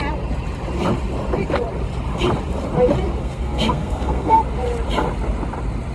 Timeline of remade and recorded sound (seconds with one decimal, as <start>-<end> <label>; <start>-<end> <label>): 0.0-3.2 recorded; 3.2-4.4 remade; 4.4-5.9 recorded